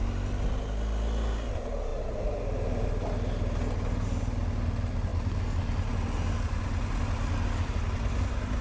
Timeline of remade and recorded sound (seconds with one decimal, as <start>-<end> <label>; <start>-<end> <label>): 0.0-8.6 recorded